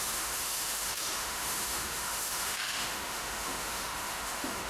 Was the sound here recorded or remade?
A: remade